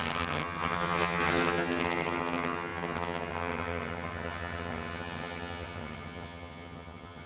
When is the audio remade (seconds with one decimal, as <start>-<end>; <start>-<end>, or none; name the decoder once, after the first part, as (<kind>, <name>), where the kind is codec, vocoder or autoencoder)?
0.0-7.3 (vocoder, HiFi-GAN)